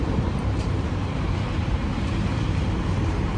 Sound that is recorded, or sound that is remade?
remade